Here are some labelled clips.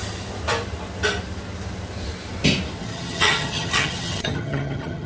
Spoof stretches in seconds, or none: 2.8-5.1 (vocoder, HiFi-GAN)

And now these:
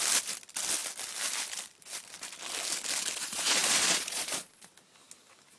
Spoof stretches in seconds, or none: 3.2-4.7 (vocoder, Vocos)